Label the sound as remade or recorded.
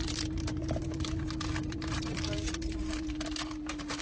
remade